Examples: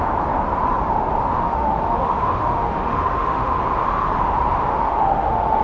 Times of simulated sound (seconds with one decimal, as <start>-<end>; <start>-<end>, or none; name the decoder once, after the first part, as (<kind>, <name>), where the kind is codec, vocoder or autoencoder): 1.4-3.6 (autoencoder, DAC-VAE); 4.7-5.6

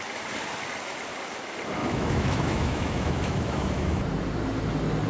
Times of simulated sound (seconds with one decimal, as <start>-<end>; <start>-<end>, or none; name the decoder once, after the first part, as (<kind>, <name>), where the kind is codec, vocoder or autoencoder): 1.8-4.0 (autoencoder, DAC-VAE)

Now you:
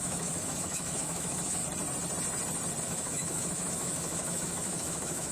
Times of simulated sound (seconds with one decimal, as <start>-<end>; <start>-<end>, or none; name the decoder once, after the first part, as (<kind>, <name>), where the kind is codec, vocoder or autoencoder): 0.0-1.6 (autoencoder, DAC-VAE); 2.8-5.3

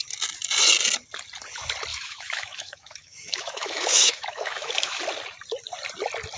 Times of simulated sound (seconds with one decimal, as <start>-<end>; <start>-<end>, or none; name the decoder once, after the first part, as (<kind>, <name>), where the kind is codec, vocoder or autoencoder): 1.9-5.0 (autoencoder, DAC-VAE)